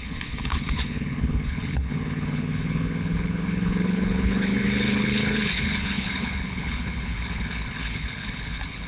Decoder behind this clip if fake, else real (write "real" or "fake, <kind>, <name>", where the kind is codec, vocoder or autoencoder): fake, codec, HILCodec